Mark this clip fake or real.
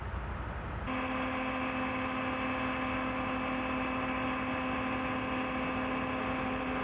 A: real